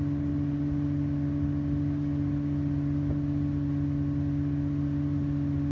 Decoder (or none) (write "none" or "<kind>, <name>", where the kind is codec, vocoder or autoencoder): none